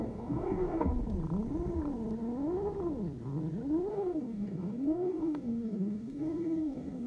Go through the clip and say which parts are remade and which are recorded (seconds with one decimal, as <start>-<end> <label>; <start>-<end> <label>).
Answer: 0.0-0.9 remade; 0.9-3.9 recorded; 3.9-7.1 remade